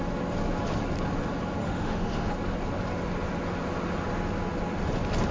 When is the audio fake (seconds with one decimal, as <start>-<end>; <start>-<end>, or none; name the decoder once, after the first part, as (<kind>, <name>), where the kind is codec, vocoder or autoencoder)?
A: 1.6-2.3 (autoencoder, DAC-VAE)